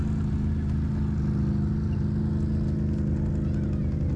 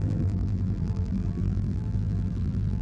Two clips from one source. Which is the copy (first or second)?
second